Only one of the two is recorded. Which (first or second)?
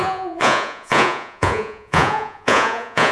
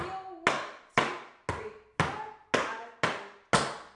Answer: second